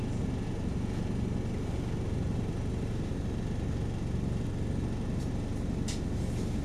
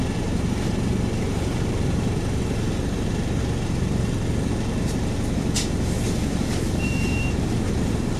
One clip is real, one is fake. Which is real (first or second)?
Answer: first